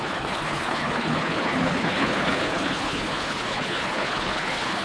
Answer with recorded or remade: remade